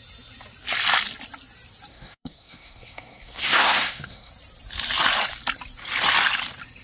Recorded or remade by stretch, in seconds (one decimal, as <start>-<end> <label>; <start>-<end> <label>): 0.0-1.9 recorded; 1.9-4.3 remade; 4.3-6.8 recorded